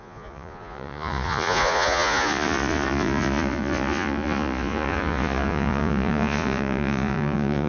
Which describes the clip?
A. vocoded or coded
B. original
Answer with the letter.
A